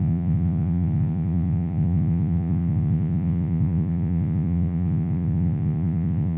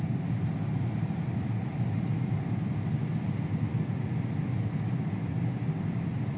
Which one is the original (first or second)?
second